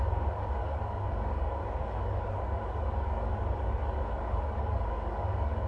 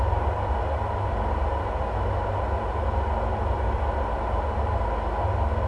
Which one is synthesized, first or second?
first